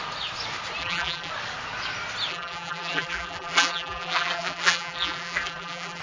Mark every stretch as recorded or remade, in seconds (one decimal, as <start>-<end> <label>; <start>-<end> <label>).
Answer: 0.0-0.8 recorded; 0.8-1.3 remade; 1.3-2.3 recorded; 2.3-6.0 remade